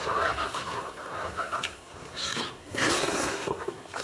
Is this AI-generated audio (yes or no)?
yes